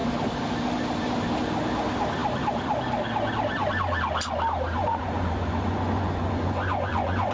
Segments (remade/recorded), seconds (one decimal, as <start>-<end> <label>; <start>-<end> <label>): 0.0-4.8 recorded; 4.8-7.3 remade